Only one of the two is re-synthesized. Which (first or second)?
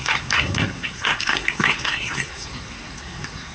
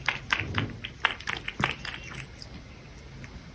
first